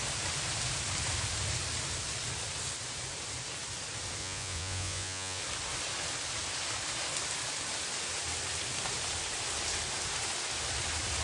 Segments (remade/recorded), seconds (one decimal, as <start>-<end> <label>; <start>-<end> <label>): 0.0-4.2 recorded; 4.2-5.4 remade; 5.4-11.2 recorded